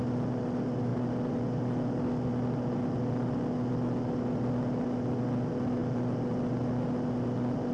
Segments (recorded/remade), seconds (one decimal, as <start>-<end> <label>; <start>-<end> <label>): 0.0-7.7 recorded